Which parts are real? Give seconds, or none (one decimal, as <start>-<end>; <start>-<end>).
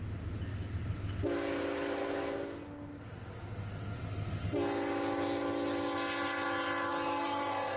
0.0-6.9